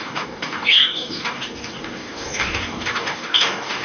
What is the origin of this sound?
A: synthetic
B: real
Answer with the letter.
A